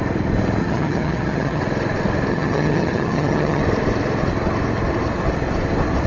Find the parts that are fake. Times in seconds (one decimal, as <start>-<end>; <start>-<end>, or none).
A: 0.6-1.6; 2.3-3.6